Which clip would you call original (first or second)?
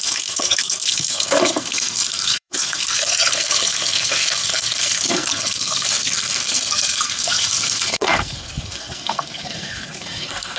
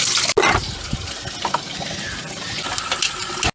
second